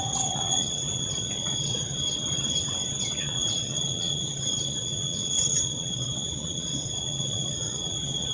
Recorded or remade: remade